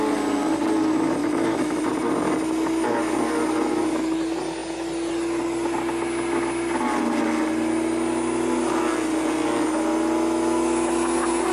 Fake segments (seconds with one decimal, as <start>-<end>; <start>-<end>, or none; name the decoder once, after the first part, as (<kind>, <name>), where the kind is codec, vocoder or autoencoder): 1.2-1.8 (autoencoder, DAC-VAE)